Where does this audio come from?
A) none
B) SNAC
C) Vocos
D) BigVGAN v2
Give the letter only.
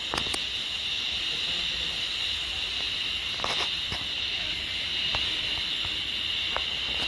A